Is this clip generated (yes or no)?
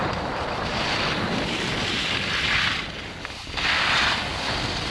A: no